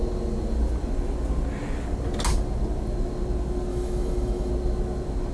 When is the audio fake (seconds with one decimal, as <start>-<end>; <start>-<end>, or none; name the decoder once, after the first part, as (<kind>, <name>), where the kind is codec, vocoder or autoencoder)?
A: 3.7-4.5 (autoencoder, DAC-VAE)